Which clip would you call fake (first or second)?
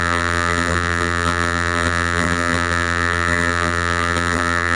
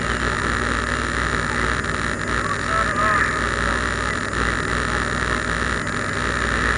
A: first